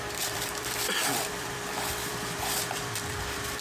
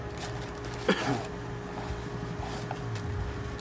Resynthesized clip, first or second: first